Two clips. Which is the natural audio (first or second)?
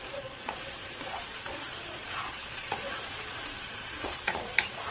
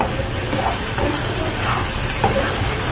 second